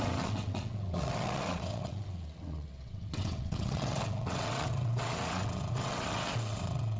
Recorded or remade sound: remade